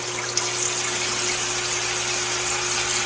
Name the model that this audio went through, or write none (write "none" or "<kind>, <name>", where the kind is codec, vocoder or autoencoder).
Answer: none